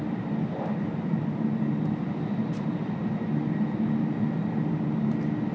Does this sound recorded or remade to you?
recorded